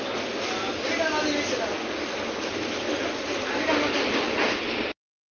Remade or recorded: recorded